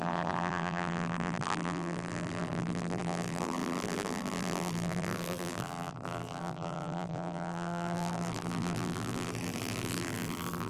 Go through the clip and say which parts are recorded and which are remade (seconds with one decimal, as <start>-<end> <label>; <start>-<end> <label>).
0.0-10.7 remade